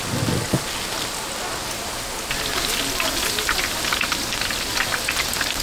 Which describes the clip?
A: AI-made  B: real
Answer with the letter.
B